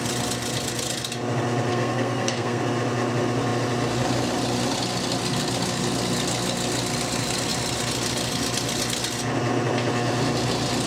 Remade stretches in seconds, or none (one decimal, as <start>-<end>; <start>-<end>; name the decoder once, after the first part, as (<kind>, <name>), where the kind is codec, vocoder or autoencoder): 1.7-2.6 (codec, SNAC)